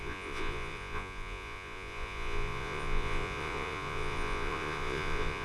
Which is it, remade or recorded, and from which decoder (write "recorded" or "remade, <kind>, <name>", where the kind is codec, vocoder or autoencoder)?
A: remade, vocoder, Vocos